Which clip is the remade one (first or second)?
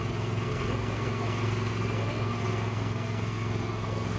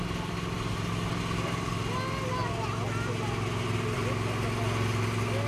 first